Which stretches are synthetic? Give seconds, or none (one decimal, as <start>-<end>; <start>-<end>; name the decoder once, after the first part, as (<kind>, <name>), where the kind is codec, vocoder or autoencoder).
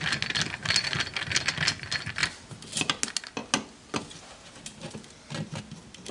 none